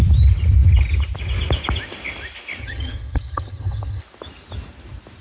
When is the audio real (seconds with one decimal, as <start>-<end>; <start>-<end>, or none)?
0.0-2.6; 4.0-5.2